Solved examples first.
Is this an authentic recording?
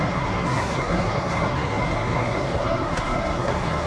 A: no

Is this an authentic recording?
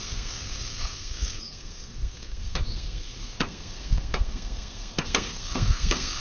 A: no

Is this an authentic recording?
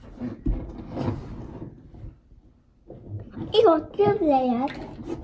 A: yes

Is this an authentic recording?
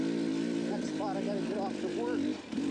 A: yes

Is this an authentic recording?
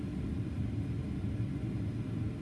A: yes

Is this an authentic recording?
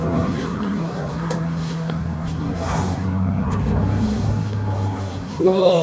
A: no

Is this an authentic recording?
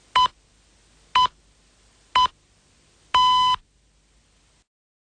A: yes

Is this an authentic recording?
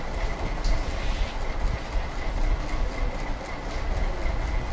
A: yes